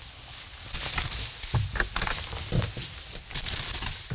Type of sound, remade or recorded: recorded